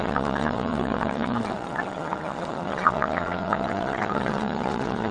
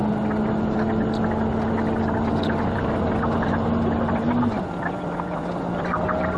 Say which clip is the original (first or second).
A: second